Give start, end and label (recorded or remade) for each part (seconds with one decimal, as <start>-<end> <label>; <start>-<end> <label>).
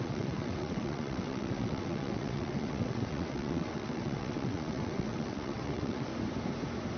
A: 0.0-6.1 remade; 6.1-7.0 recorded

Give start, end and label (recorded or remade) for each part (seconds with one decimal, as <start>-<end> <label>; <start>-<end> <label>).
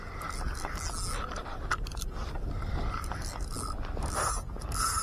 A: 0.0-5.0 recorded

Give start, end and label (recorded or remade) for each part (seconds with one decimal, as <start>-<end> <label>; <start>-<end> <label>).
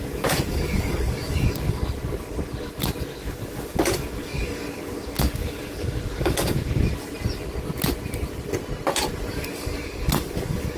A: 0.0-1.8 remade; 1.8-3.2 recorded; 3.2-6.9 remade; 6.9-9.3 recorded; 9.3-10.8 remade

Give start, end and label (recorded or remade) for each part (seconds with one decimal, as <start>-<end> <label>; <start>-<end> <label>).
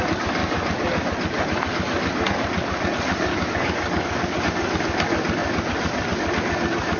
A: 0.0-3.3 recorded; 3.3-4.4 remade; 4.4-7.0 recorded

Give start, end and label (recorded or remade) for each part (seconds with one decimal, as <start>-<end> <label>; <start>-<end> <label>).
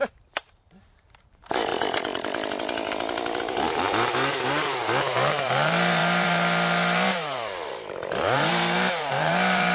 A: 0.0-1.7 remade; 1.7-3.4 recorded; 3.4-9.7 remade